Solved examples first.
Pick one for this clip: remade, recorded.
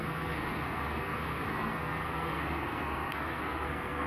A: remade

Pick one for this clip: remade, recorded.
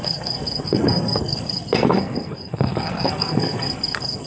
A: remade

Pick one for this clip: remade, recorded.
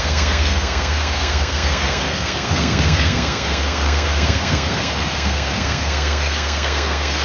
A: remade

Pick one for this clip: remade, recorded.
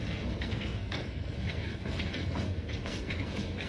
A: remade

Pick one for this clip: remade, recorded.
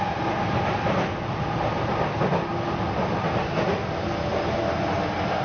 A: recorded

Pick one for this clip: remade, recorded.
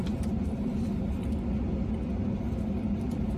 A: recorded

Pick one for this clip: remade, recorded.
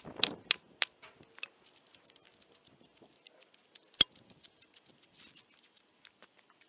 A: recorded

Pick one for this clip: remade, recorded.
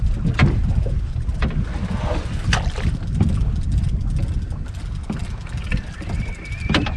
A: recorded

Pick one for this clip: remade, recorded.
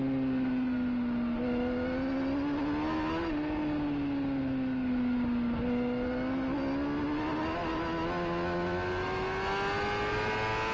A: recorded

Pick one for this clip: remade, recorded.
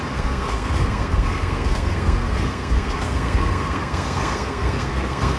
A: remade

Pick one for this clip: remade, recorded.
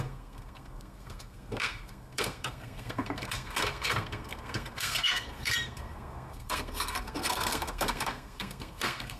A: remade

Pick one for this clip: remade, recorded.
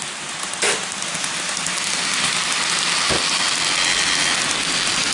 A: recorded